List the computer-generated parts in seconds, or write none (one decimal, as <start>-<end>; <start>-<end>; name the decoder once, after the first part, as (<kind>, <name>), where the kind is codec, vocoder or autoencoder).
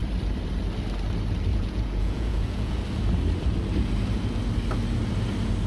1.5-2.8 (vocoder, Vocos)